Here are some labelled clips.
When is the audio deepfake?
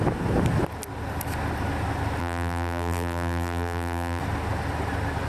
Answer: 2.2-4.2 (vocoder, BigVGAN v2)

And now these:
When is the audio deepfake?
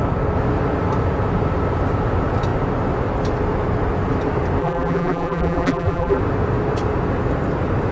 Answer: 4.6-6.2 (vocoder, BigVGAN v2)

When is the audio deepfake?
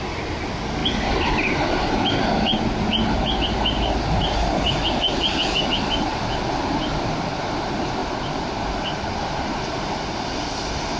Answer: none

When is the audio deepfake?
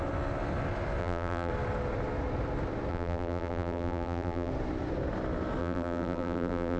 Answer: 1.0-1.5 (vocoder, BigVGAN v2); 2.9-4.5; 5.6-6.8